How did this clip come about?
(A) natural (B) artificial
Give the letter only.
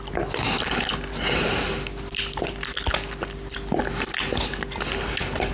A